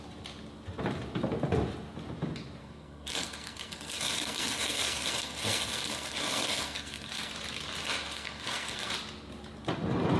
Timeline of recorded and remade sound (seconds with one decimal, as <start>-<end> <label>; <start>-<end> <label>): 0.0-2.6 recorded; 2.6-7.3 remade; 7.3-7.8 recorded; 7.8-8.9 remade; 8.9-10.2 recorded